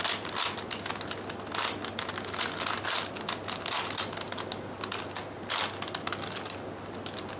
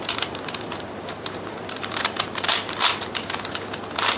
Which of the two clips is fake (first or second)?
second